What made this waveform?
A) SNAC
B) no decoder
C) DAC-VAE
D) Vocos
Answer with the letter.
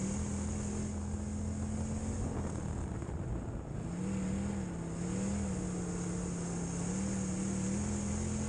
B